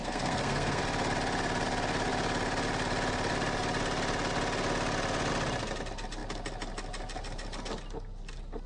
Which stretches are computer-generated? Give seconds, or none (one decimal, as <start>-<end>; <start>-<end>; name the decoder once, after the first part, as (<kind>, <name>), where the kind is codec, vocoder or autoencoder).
0.0-0.8 (codec, SNAC)